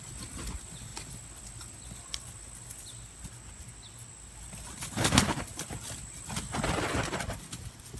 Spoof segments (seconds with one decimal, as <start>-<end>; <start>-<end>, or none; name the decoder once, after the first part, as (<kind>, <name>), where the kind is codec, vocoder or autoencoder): none